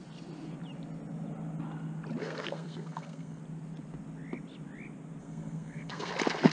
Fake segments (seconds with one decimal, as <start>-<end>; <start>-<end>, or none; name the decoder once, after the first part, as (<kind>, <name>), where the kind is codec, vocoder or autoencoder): 2.2-3.4 (codec, SNAC); 5.2-6.1